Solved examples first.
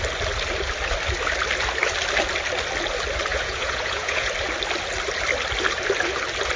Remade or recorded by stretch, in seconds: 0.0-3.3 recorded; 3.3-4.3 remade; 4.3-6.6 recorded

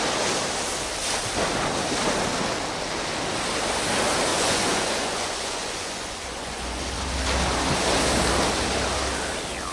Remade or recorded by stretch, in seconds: 0.0-4.3 recorded; 4.3-6.8 remade; 6.8-9.7 recorded